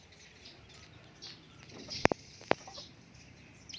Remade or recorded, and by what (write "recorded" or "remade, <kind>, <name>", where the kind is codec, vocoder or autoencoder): recorded